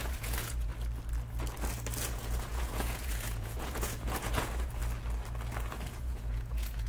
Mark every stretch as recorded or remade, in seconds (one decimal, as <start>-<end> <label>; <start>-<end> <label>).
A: 0.0-0.7 remade; 0.7-2.1 recorded; 2.1-4.8 remade; 4.8-5.9 recorded; 5.9-6.9 remade

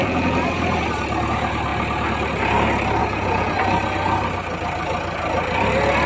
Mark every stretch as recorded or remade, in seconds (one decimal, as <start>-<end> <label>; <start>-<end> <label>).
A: 0.0-0.8 remade; 0.8-3.0 recorded; 3.0-3.6 remade; 3.6-6.1 recorded

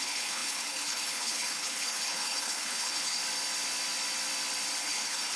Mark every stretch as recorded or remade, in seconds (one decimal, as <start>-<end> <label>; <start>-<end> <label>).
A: 0.0-3.2 remade; 3.2-4.8 recorded; 4.8-5.4 remade

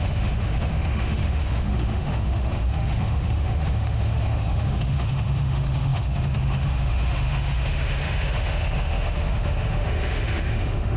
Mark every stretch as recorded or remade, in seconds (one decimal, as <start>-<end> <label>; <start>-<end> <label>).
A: 0.0-11.0 remade

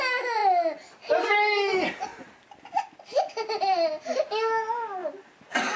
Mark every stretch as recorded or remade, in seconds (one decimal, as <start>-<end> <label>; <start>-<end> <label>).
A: 0.0-5.8 recorded

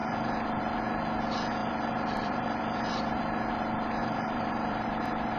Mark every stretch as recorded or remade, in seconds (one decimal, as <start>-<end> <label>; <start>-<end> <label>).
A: 0.0-1.6 recorded; 1.6-3.2 remade; 3.2-4.0 recorded; 4.0-5.0 remade; 5.0-5.4 recorded

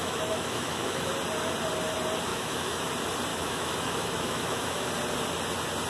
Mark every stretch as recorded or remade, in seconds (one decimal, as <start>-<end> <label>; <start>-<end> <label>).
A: 0.0-1.1 remade; 1.1-2.3 recorded; 2.3-2.9 remade; 2.9-3.3 recorded; 3.3-4.9 remade; 4.9-5.9 recorded

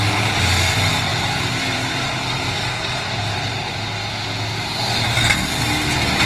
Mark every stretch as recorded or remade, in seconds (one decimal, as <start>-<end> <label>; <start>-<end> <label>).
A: 0.0-1.1 recorded; 1.1-3.7 remade; 3.7-6.3 recorded